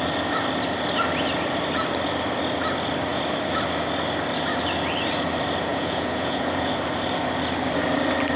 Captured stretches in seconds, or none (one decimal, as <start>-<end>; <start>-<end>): 0.0-5.7; 6.7-8.4